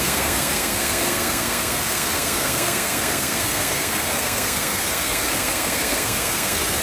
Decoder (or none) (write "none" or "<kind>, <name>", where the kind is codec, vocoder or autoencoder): codec, SNAC